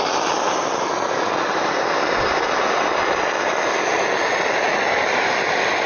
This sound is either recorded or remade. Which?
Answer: remade